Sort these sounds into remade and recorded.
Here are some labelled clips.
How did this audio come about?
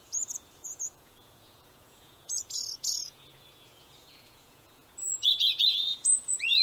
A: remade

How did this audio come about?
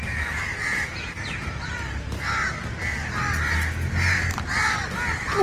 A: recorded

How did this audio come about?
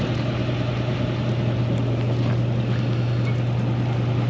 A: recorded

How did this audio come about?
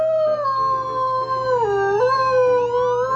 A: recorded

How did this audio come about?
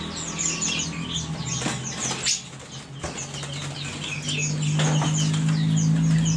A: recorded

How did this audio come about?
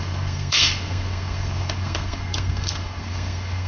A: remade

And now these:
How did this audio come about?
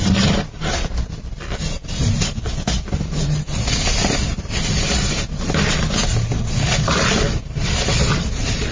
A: recorded